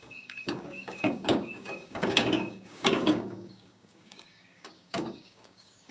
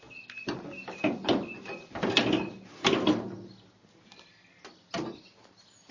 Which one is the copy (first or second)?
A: first